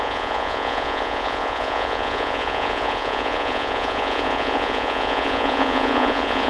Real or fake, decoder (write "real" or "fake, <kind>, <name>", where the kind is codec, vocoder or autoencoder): fake, vocoder, Vocos